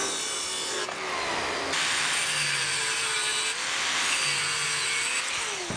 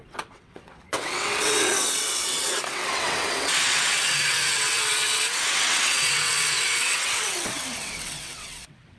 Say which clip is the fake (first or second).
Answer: second